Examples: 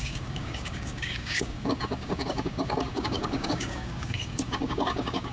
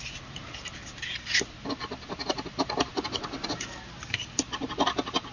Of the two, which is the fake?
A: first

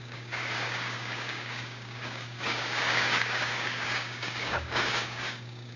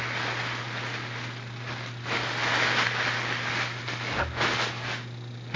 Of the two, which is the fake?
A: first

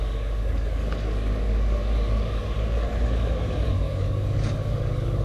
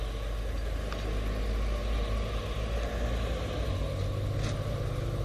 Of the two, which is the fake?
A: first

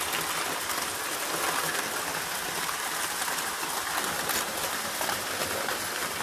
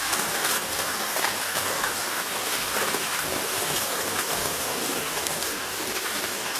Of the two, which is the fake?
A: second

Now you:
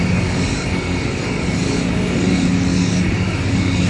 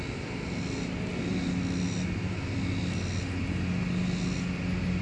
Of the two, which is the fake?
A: first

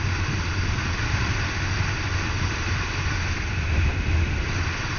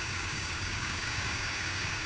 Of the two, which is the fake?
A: second